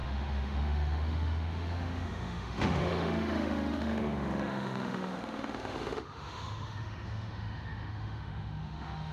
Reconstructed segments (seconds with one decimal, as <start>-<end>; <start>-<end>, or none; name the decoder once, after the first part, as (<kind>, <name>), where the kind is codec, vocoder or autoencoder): 0.0-9.1 (autoencoder, DAC-VAE)